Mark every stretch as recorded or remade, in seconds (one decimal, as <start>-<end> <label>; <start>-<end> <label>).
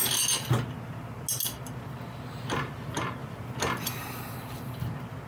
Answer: 0.0-5.3 recorded